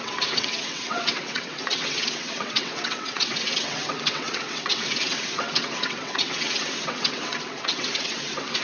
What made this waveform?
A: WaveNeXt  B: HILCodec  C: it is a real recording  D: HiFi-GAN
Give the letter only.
A